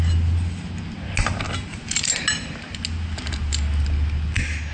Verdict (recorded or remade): recorded